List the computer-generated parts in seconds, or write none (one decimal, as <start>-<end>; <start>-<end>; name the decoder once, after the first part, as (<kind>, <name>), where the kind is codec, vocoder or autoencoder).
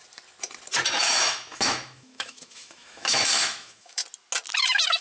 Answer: 1.0-4.0 (autoencoder, DAC-VAE); 4.6-5.0